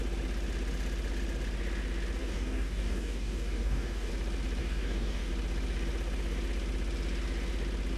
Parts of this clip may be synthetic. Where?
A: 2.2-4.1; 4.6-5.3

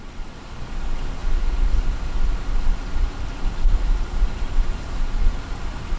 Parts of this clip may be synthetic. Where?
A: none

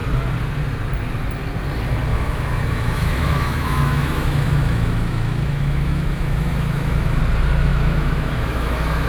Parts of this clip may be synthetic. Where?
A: 2.1-7.2; 7.7-9.1